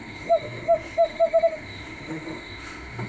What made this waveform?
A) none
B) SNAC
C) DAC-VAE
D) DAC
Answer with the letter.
C